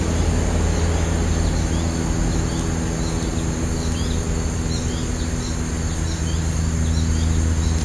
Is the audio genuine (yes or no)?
yes